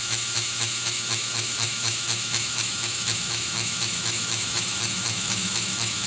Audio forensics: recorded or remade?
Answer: remade